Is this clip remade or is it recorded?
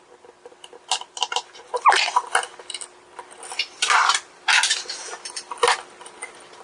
recorded